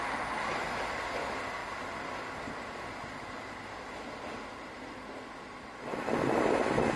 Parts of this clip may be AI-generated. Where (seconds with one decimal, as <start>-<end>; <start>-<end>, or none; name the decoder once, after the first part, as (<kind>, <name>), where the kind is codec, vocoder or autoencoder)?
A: none